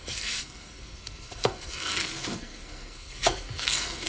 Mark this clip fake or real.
fake